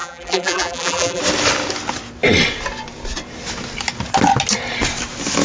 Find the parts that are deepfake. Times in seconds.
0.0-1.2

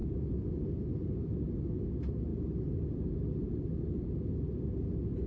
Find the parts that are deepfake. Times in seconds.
none

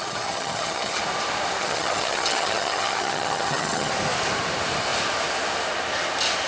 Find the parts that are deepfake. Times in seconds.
0.0-1.0; 1.6-3.9

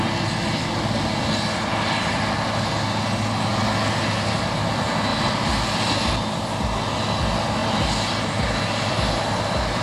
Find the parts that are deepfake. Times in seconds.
none

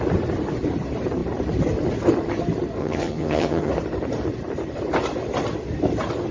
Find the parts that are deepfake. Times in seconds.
2.8-3.7

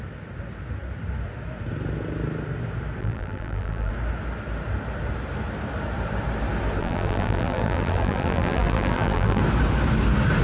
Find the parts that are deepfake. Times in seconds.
3.0-3.9; 6.8-9.4

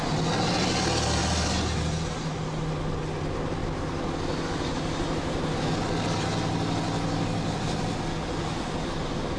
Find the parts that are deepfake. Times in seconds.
none

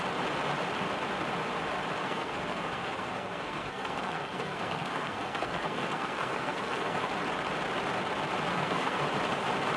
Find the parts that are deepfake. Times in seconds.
2.0-7.1; 8.5-9.0